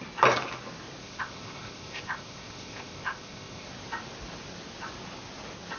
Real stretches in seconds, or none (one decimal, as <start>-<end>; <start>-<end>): 0.0-1.0; 3.7-5.8